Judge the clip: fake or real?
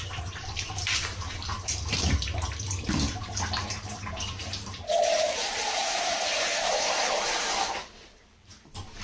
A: fake